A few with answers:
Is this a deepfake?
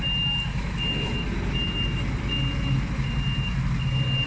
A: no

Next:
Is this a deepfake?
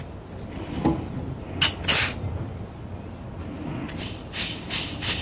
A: no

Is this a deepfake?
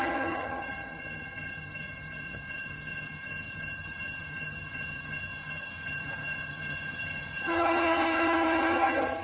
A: yes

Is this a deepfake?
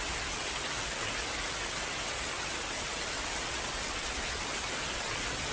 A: no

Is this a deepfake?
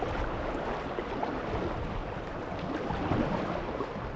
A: no